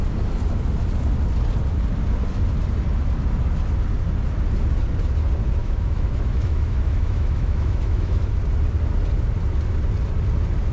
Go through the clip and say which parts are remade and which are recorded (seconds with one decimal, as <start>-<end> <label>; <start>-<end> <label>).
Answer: 0.0-5.6 recorded; 5.6-8.3 remade; 8.3-10.7 recorded